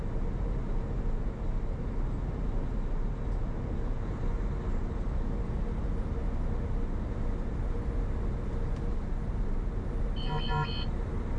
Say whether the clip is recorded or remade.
recorded